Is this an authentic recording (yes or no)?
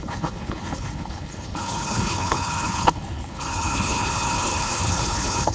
no